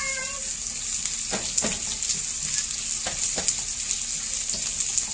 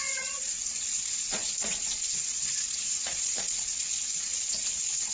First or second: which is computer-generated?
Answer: second